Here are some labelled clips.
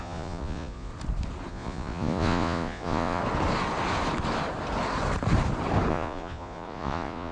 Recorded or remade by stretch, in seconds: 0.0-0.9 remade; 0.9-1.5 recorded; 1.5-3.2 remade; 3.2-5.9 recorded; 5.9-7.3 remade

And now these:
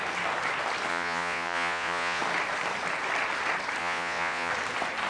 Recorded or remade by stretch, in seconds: 0.0-0.9 recorded; 0.9-2.2 remade; 2.2-3.8 recorded; 3.8-4.5 remade; 4.5-5.1 recorded

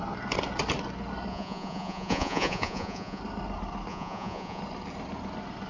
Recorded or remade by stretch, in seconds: 0.0-1.3 recorded; 1.3-3.2 remade; 3.2-3.9 recorded; 3.9-4.6 remade; 4.6-5.7 recorded

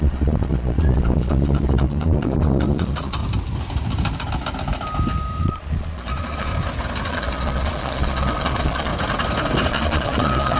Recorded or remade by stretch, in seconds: 0.0-3.2 remade; 3.2-5.4 recorded; 5.4-6.5 remade; 6.5-7.1 recorded; 7.1-8.9 remade; 8.9-9.7 recorded; 9.7-10.6 remade

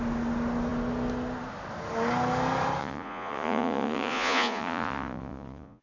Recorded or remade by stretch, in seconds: 0.0-2.8 recorded; 2.8-5.8 remade

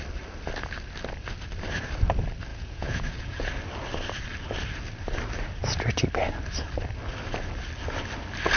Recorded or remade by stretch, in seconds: 0.0-2.5 recorded; 2.5-3.5 remade; 3.5-8.6 recorded

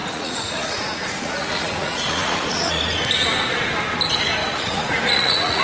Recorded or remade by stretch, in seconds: 0.0-2.8 remade; 2.8-4.4 recorded; 4.4-5.6 remade

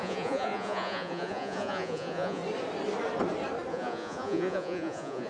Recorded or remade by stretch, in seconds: 0.0-2.4 remade; 2.4-3.7 recorded; 3.7-5.3 remade